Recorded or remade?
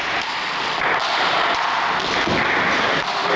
recorded